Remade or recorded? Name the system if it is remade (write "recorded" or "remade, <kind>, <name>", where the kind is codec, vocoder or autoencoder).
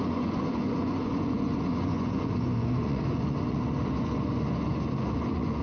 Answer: remade, vocoder, Vocos